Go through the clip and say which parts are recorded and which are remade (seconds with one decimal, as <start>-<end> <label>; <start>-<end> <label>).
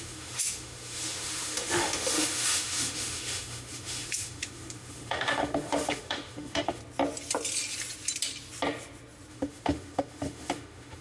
0.0-6.8 remade; 6.8-9.3 recorded; 9.3-11.0 remade